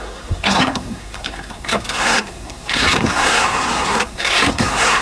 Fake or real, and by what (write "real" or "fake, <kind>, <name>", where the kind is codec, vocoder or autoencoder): fake, codec, SNAC